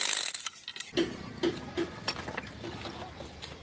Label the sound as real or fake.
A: real